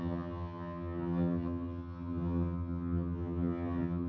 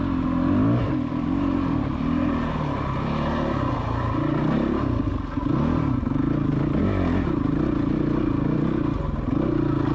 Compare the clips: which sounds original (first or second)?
second